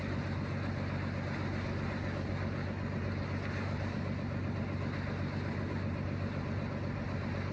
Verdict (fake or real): real